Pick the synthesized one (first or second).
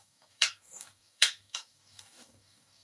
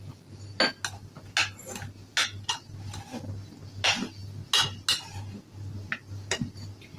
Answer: first